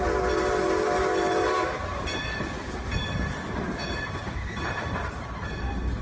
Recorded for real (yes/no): yes